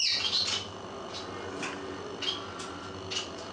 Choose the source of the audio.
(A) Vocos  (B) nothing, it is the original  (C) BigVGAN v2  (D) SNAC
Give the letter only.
B